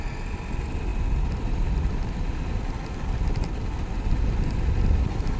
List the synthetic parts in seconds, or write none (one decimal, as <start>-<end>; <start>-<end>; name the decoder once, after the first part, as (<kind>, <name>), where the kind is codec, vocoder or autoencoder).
none